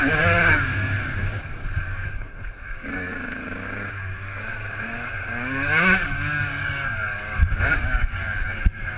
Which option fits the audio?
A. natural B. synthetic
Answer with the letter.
B